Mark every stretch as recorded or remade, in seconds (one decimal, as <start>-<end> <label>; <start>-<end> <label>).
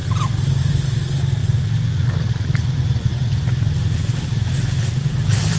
0.0-0.7 remade; 0.7-1.4 recorded; 1.4-2.3 remade; 2.3-3.1 recorded; 3.1-5.6 remade